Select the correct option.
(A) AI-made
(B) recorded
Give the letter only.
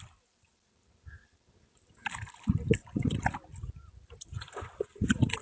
B